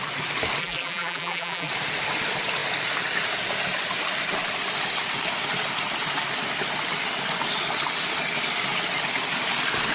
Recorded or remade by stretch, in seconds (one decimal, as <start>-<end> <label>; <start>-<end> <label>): 0.0-0.6 recorded; 0.6-1.7 remade; 1.7-9.9 recorded